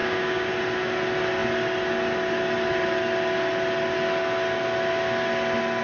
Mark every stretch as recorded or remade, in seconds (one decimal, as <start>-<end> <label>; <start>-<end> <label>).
0.0-0.5 remade; 0.5-5.8 recorded